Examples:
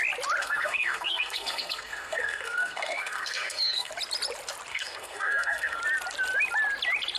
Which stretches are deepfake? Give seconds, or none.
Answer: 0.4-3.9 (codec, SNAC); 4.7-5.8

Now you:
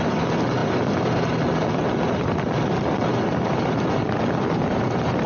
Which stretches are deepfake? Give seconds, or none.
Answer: none

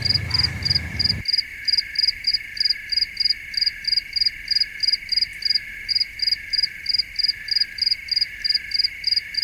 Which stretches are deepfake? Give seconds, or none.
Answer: none

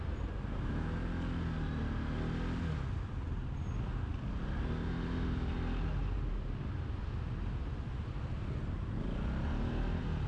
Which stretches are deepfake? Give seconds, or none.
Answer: none

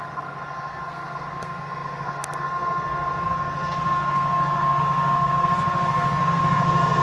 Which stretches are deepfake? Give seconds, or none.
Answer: 0.0-7.0 (codec, SNAC)